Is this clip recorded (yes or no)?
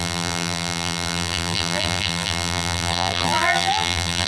no